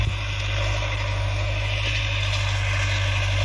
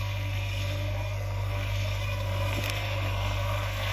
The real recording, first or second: first